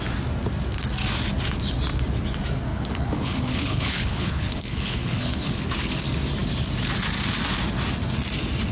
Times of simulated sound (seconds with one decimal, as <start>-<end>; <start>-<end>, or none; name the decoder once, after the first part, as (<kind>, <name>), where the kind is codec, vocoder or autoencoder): 2.7-5.6 (codec, HILCodec)